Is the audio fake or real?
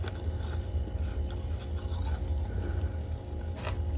real